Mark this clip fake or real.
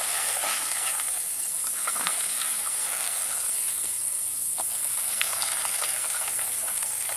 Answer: fake